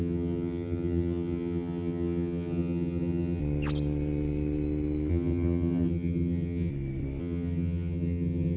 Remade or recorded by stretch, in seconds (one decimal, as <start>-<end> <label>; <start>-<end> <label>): 0.0-3.4 remade; 3.4-5.1 recorded; 5.1-6.7 remade; 6.7-7.2 recorded; 7.2-8.6 remade